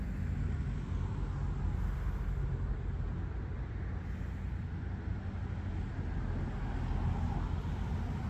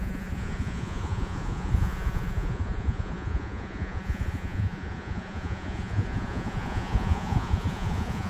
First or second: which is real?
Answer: first